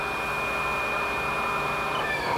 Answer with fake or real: real